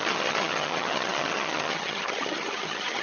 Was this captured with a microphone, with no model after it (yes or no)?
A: no